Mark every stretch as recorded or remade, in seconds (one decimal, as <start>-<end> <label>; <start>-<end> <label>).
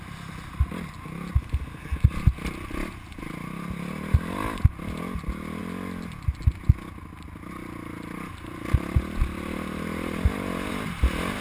0.0-11.4 recorded